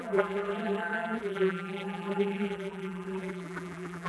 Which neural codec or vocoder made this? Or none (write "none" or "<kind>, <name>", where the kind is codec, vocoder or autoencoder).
vocoder, BigVGAN v2